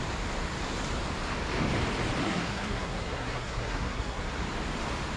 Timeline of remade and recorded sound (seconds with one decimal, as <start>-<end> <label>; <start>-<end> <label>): 0.0-2.2 recorded; 2.2-4.2 remade; 4.2-5.2 recorded